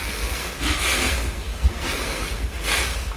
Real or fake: fake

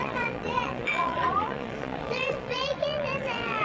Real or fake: fake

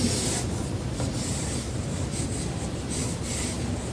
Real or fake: real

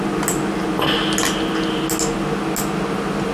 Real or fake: real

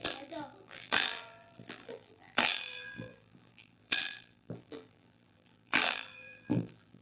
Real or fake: fake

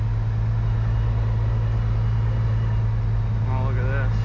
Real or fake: real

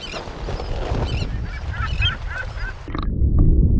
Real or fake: real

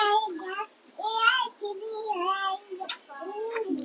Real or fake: real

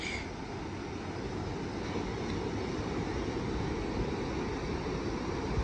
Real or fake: real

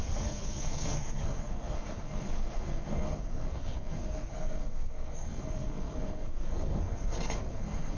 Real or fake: fake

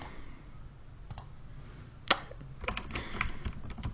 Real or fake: real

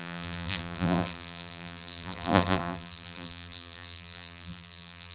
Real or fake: fake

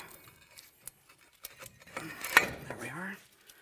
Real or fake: real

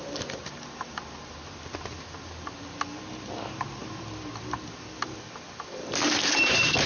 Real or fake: real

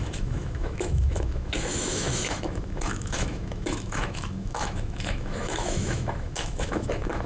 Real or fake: fake